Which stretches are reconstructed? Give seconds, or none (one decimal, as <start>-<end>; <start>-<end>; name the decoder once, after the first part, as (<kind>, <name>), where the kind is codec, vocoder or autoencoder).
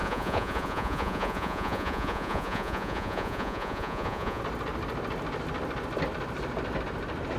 0.0-4.4 (vocoder, Vocos)